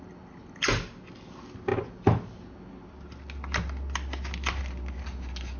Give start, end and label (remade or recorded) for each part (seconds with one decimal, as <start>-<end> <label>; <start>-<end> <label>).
0.0-5.6 recorded